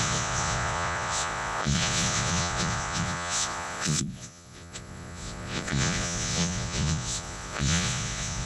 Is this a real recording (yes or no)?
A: no